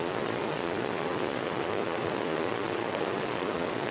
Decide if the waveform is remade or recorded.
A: remade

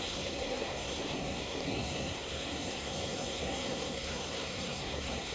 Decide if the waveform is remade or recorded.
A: remade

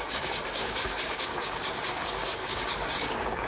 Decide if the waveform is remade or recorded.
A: remade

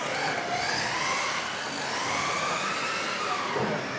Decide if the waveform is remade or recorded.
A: recorded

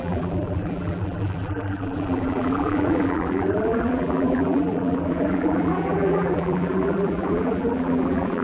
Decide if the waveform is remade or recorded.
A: remade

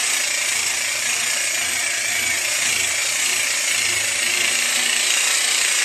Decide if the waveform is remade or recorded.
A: recorded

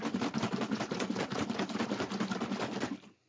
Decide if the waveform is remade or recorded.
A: remade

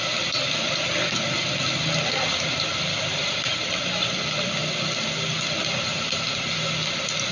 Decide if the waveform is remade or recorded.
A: recorded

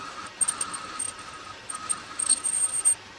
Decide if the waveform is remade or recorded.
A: recorded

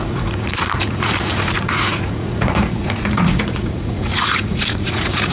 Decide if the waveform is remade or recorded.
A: remade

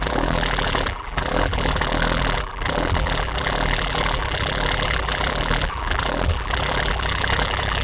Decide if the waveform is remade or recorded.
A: remade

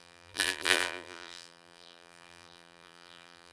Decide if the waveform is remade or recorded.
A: remade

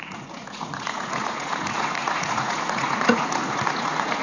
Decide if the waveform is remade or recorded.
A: remade